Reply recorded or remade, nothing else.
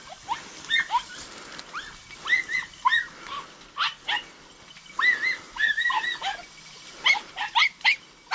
recorded